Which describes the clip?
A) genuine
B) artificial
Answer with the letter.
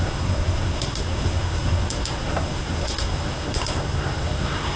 B